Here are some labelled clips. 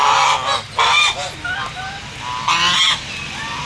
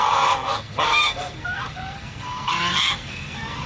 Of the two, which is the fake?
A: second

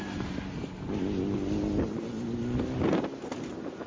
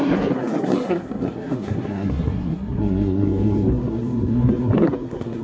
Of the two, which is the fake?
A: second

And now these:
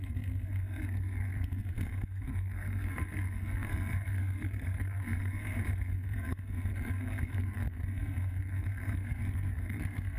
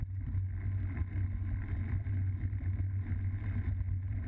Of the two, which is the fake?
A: first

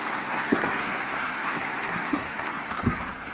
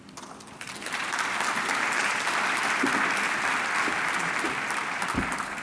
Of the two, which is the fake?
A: first